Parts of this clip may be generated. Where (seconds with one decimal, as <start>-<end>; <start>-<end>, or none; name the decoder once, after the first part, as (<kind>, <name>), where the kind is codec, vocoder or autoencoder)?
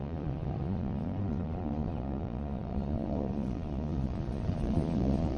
0.0-5.4 (vocoder, Vocos)